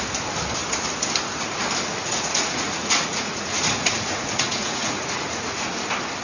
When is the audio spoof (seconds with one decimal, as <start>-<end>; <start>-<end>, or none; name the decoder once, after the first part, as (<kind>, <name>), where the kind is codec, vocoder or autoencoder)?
2.0-5.7 (vocoder, Vocos)